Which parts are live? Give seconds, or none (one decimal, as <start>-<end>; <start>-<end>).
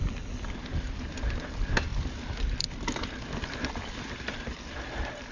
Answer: 0.0-5.3